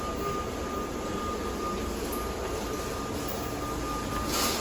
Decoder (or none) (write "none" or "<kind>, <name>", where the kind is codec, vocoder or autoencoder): none